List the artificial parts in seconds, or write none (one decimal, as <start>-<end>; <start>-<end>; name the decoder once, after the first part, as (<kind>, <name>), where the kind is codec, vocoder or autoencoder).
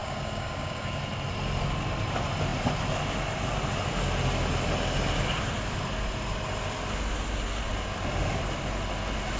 0.0-1.0 (codec, DAC)